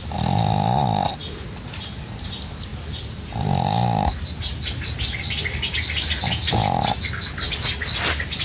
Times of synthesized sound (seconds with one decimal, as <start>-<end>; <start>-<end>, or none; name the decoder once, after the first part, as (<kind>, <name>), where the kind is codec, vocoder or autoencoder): none